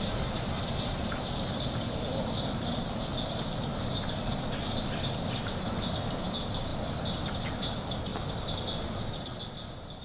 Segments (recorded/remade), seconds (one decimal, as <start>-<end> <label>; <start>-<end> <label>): 0.0-3.1 remade; 3.1-5.5 recorded; 5.5-6.7 remade; 6.7-7.3 recorded; 7.3-8.1 remade; 8.1-9.2 recorded; 9.2-10.0 remade